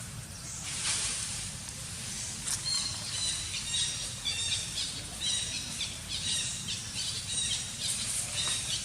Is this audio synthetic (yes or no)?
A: yes